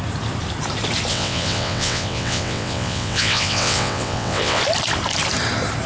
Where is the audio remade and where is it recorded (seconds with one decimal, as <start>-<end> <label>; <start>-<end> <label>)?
0.0-1.1 recorded; 1.1-4.6 remade; 4.6-5.9 recorded